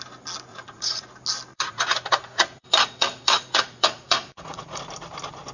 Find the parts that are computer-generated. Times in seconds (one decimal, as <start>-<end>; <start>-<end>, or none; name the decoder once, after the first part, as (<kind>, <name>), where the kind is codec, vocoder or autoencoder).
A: 0.5-1.1 (vocoder, Vocos); 1.5-4.8